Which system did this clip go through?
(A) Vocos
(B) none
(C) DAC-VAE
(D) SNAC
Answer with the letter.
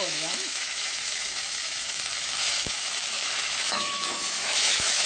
C